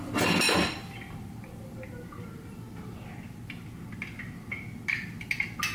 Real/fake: real